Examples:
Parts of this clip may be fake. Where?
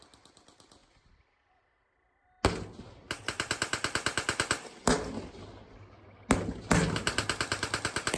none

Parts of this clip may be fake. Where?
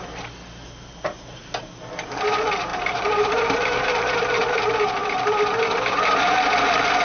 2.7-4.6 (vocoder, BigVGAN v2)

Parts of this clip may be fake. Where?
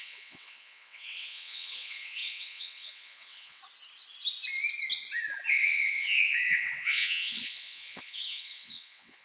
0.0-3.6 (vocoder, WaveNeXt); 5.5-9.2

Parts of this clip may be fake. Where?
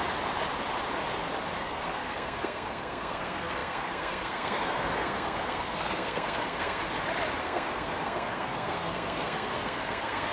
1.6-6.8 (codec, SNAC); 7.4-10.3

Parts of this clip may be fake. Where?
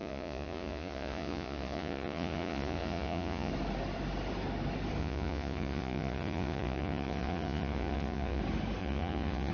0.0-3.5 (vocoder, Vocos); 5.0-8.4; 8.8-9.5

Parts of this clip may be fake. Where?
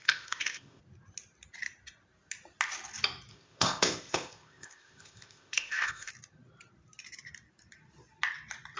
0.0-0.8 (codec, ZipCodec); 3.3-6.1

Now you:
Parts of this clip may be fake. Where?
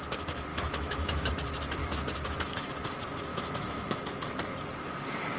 0.5-1.3 (autoencoder, DAC-VAE); 1.8-2.7; 3.3-4.1